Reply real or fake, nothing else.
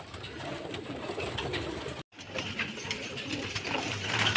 fake